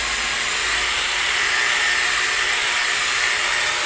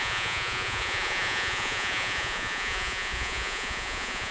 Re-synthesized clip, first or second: second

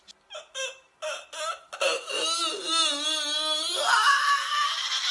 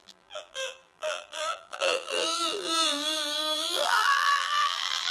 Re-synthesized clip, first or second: second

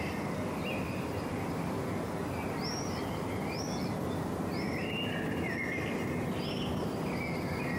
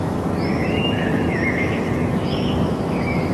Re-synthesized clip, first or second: second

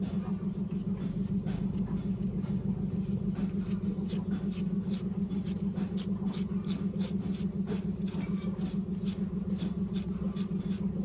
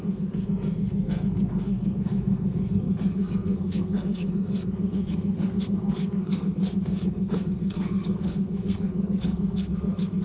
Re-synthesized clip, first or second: second